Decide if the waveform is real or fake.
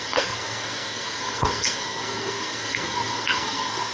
fake